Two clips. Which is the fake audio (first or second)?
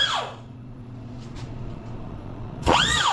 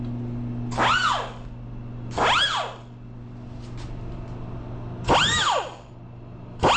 first